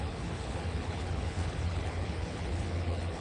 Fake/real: fake